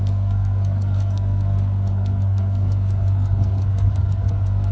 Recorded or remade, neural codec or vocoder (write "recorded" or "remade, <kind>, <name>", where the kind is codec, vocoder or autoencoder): remade, codec, SNAC